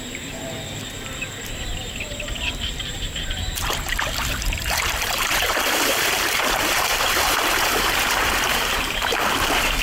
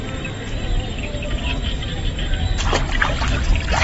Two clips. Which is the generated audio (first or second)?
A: first